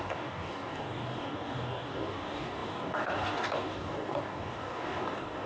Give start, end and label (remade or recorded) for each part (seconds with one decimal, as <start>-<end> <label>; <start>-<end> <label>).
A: 0.0-5.5 remade